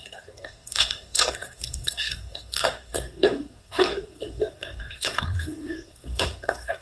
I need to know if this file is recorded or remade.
remade